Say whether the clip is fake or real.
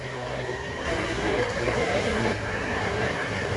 fake